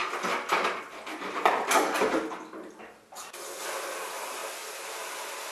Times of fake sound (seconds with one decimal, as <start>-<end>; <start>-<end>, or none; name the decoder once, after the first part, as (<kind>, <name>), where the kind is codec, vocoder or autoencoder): none